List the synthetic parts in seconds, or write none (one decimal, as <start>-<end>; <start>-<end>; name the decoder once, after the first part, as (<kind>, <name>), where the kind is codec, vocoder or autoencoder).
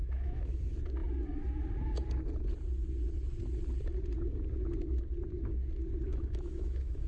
0.0-0.6 (autoencoder, DAC-VAE); 6.1-7.1